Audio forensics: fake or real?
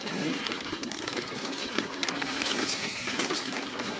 fake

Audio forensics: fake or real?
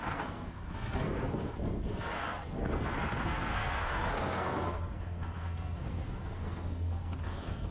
fake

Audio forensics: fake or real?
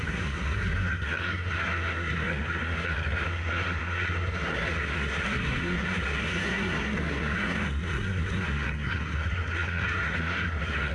fake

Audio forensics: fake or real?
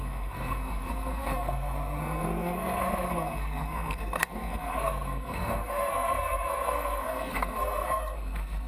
fake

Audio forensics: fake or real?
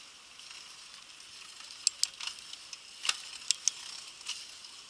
real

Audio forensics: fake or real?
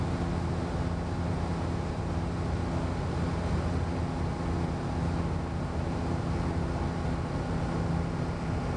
real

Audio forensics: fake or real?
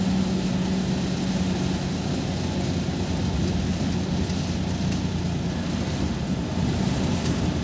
real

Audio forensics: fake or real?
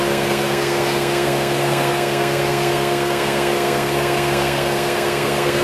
fake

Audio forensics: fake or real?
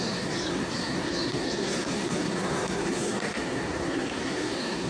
fake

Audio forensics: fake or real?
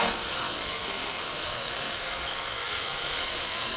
fake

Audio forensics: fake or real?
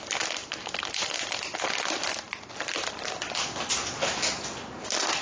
real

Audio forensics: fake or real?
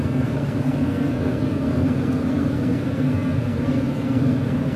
fake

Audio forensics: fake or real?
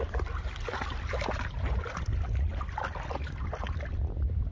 real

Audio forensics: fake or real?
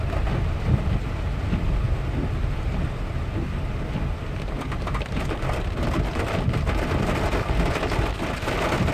real